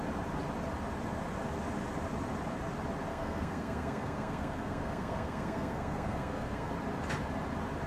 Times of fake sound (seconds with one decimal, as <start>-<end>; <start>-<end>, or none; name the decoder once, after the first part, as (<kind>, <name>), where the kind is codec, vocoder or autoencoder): 3.1-6.7 (codec, SNAC)